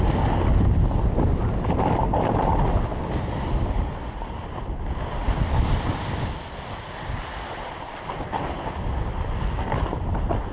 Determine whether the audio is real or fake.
real